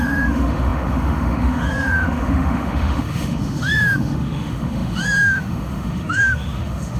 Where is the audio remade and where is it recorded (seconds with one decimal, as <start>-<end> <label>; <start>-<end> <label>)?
0.0-7.0 remade